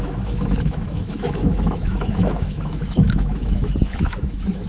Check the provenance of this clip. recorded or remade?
remade